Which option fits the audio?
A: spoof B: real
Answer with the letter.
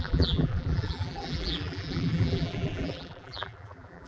A